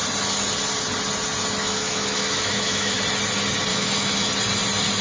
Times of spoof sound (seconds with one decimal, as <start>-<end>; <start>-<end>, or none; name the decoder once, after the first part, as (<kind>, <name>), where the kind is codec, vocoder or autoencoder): 1.6-3.0 (autoencoder, DAC-VAE); 3.7-4.3